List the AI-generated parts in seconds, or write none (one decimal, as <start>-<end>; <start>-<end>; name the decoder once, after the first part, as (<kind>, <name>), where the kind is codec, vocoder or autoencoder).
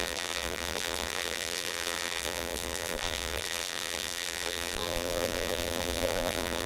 0.0-6.7 (vocoder, BigVGAN v2)